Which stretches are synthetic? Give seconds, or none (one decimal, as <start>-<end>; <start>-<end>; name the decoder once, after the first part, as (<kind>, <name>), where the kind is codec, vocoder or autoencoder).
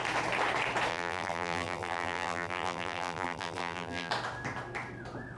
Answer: 0.9-4.1 (vocoder, BigVGAN v2)